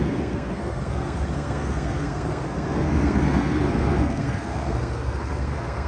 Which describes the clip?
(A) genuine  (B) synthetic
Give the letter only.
B